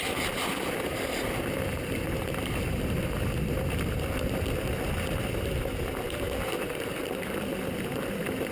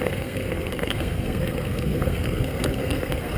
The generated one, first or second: second